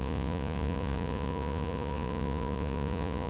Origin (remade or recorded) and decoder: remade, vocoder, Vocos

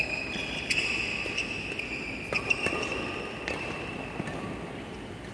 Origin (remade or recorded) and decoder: recorded